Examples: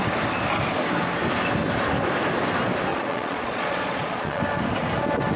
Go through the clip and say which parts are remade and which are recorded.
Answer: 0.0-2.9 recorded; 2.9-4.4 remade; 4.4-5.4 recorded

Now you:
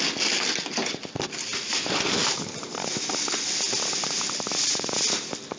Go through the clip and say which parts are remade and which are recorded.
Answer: 0.0-5.6 recorded